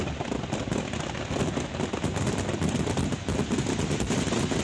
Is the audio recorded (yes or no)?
yes